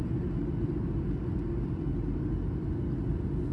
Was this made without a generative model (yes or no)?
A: yes